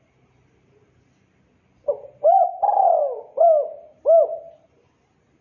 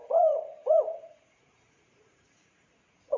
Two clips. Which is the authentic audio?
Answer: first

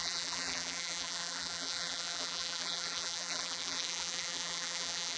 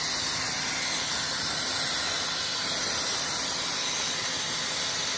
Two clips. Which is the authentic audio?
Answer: second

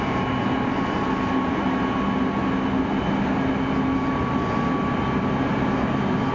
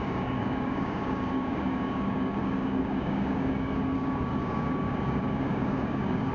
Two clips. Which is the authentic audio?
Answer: first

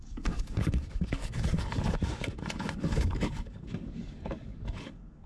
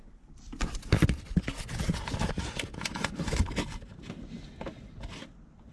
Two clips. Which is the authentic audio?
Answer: second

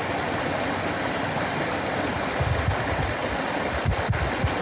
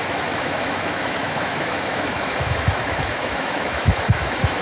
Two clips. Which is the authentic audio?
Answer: first